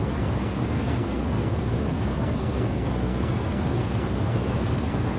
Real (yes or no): no